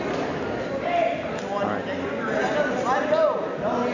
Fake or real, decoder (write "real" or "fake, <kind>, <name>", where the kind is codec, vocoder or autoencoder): real